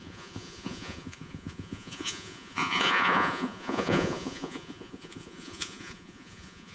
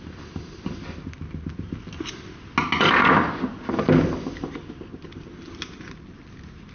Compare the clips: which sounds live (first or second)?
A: second